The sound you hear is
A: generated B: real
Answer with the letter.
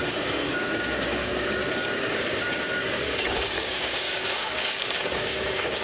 A